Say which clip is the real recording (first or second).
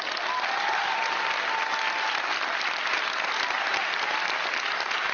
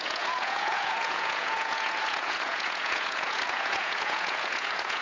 first